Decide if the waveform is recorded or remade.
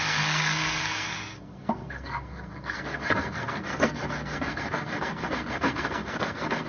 remade